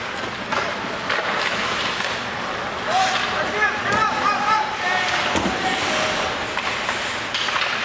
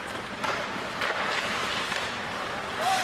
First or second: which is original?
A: first